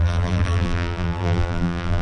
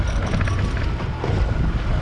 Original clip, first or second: second